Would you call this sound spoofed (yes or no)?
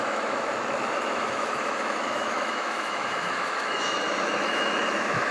yes